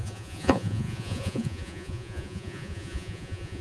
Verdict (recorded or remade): remade